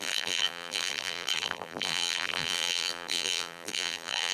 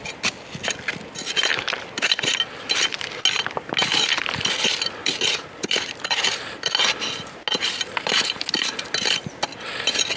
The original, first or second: second